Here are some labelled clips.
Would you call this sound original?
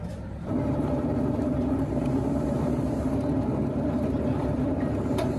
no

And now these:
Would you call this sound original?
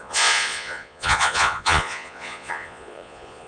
no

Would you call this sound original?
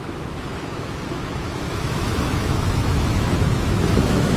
no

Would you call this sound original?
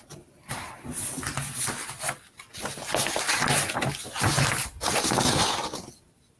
yes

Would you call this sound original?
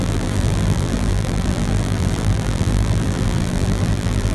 no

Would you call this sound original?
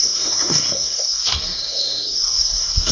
no